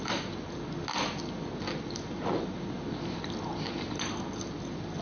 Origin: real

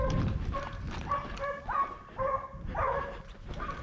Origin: real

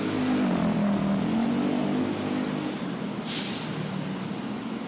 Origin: real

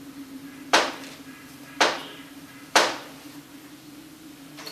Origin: fake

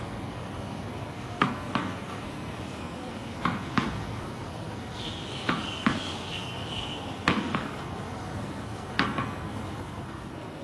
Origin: fake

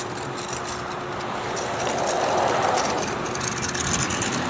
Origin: real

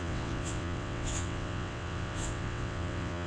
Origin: fake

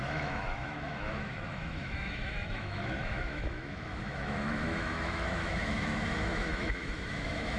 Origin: fake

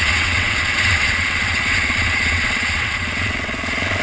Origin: fake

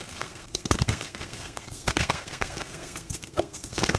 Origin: fake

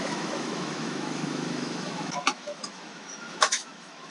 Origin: fake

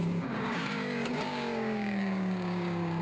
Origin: fake